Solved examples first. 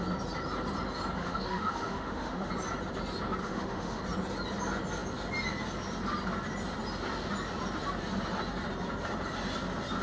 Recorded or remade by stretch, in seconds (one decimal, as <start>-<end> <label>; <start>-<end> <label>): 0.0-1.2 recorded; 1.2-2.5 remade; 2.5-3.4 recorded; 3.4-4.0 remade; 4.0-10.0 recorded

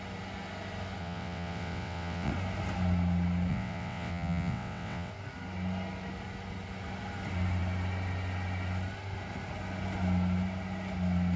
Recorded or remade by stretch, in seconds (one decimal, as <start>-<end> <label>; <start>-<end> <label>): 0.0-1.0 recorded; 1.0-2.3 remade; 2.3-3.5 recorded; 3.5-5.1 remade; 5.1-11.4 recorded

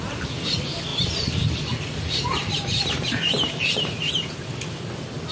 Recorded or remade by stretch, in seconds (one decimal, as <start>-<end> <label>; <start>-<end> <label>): 0.0-0.9 recorded; 0.9-4.1 remade; 4.1-5.3 recorded

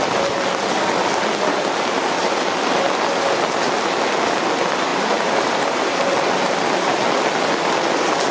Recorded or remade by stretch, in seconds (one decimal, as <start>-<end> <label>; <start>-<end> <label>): 0.0-4.9 recorded; 4.9-5.8 remade; 5.8-8.3 recorded

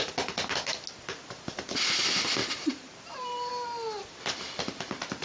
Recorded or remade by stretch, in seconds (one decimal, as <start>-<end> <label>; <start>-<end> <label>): 0.0-2.4 recorded; 2.4-3.5 remade; 3.5-5.2 recorded

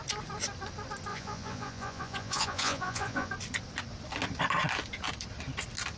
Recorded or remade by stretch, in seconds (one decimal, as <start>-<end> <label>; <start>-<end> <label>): 0.0-1.1 recorded; 1.1-3.3 remade; 3.3-6.0 recorded